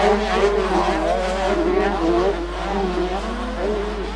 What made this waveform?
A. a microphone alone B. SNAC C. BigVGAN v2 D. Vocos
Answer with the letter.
A